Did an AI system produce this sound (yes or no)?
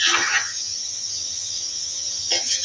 yes